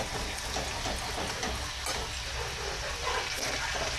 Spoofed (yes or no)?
no